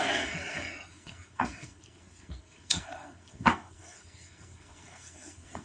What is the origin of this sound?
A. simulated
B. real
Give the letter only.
A